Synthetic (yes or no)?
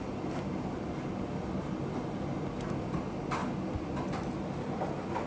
no